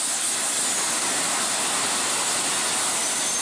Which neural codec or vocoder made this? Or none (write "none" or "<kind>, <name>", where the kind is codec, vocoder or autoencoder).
none